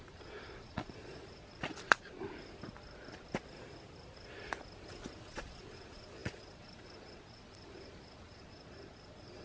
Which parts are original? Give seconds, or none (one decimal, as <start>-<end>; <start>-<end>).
1.5-5.2